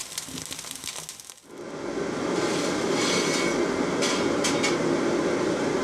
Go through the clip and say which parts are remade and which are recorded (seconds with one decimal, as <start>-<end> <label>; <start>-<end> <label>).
0.0-5.8 recorded